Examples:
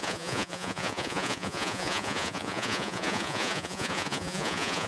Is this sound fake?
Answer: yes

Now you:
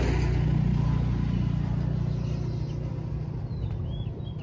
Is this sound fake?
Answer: no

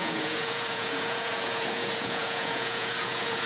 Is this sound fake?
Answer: yes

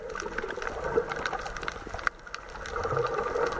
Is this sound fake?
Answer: no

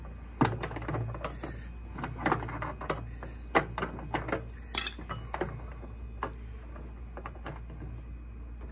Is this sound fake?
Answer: no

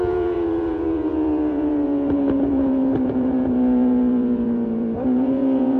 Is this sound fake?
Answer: yes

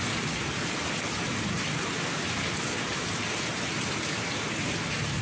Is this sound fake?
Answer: no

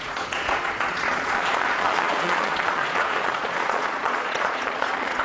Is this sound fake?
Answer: yes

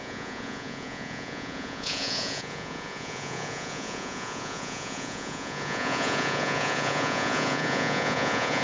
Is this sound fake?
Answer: yes